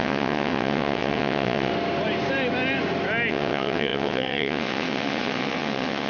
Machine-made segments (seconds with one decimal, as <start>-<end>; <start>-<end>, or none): 0.0-1.7; 3.3-6.1

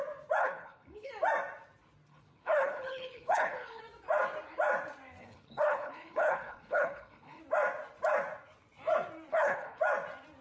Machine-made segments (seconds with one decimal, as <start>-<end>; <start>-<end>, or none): 0.4-1.1; 2.1-3.8; 5.2-7.4; 9.3-9.8

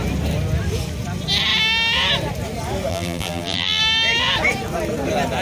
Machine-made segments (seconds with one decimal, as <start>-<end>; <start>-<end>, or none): 2.9-3.8

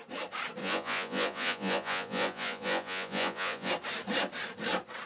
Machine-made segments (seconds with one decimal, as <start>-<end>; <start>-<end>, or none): 0.6-3.7

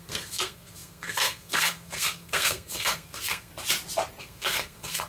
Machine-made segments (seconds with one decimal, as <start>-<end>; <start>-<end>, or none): 0.0-3.5; 4.2-5.1

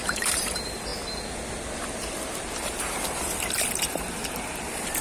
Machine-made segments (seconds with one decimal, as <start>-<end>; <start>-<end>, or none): 0.0-0.9; 1.5-5.0